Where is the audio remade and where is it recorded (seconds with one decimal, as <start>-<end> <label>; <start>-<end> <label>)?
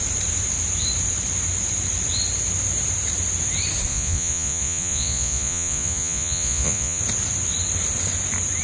0.0-3.9 recorded; 3.9-7.0 remade; 7.0-8.6 recorded